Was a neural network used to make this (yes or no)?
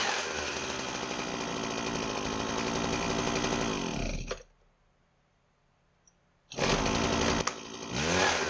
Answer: no